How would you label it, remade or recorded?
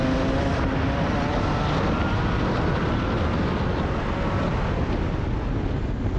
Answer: recorded